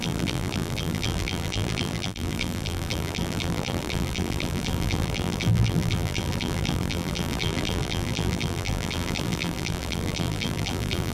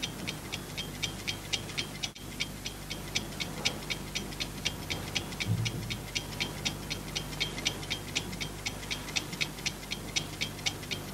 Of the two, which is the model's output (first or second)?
first